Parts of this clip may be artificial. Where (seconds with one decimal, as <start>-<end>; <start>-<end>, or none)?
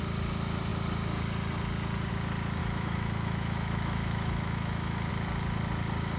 2.6-5.1